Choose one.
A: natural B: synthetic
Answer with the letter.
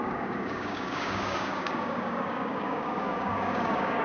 B